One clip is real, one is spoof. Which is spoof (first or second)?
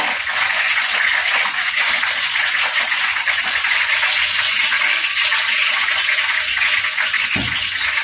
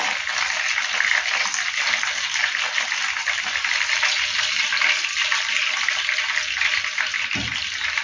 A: first